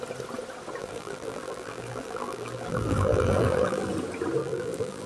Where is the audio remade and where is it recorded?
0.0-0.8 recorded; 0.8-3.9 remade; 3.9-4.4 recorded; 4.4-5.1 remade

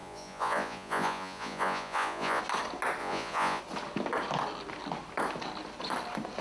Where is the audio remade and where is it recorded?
0.0-2.4 remade; 2.4-3.0 recorded; 3.0-3.6 remade; 3.6-6.4 recorded

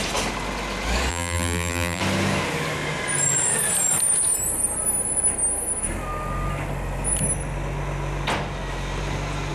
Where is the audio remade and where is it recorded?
0.0-1.1 recorded; 1.1-2.0 remade; 2.0-9.5 recorded

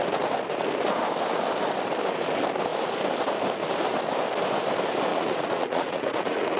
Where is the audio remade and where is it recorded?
0.0-5.1 recorded; 5.1-6.6 remade

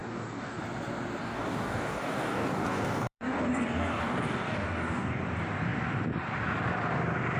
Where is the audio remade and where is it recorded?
0.0-0.6 remade; 0.6-1.2 recorded; 1.2-5.2 remade; 5.2-7.4 recorded

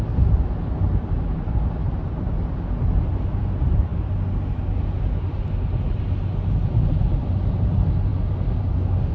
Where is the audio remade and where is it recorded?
0.0-9.1 recorded

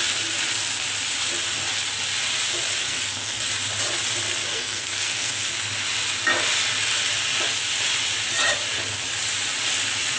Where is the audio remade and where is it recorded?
0.0-2.8 recorded; 2.8-3.5 remade; 3.5-4.5 recorded; 4.5-5.5 remade; 5.5-10.2 recorded

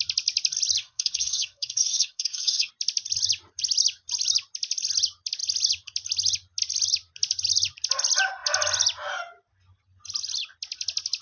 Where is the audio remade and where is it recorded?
0.0-0.8 recorded; 0.8-2.7 remade; 2.7-11.2 recorded